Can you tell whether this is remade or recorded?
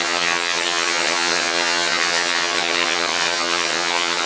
remade